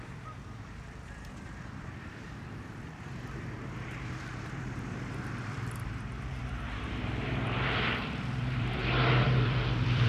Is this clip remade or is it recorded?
remade